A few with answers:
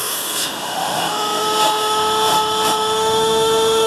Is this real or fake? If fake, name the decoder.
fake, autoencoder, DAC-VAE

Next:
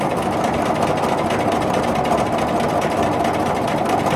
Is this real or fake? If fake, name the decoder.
real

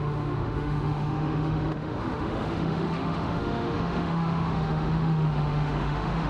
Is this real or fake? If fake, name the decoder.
fake, autoencoder, DAC-VAE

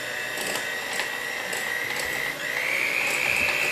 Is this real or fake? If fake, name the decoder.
real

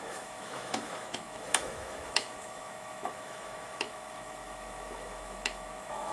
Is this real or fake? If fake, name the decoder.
fake, autoencoder, DAC-VAE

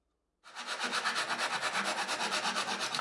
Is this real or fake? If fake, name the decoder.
real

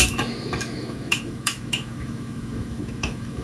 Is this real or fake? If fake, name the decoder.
fake, autoencoder, DAC-VAE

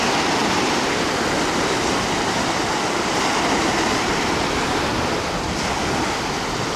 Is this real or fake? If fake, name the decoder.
real